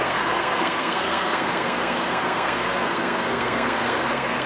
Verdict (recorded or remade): remade